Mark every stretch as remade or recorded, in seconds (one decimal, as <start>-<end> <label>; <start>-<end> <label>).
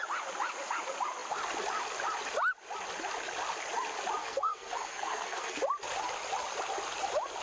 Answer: 0.0-4.2 recorded; 4.2-5.6 remade; 5.6-7.4 recorded